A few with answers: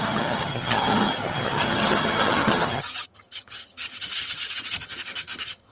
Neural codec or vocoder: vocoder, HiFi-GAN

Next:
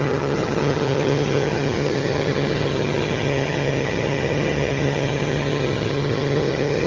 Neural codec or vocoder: vocoder, HiFi-GAN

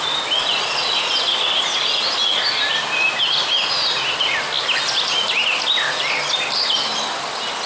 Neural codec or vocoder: none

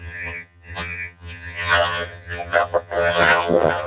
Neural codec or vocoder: vocoder, HiFi-GAN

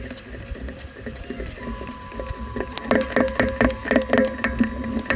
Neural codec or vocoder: none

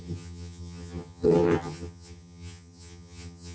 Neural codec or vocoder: vocoder, HiFi-GAN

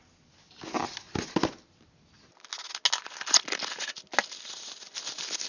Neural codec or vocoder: none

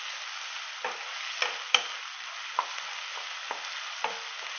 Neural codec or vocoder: none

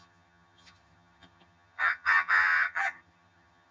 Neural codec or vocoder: vocoder, HiFi-GAN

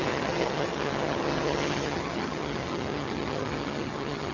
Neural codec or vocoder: vocoder, HiFi-GAN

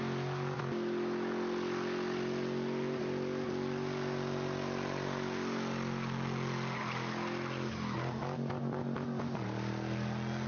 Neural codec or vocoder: none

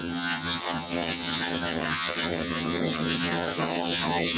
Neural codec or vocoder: vocoder, HiFi-GAN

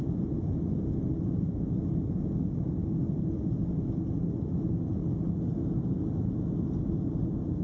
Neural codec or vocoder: none